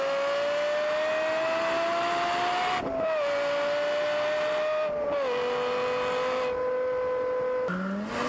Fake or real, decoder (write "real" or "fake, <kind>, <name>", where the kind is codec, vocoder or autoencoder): real